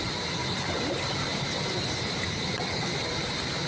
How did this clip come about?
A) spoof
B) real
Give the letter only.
B